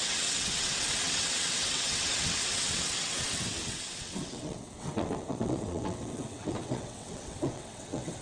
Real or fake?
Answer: fake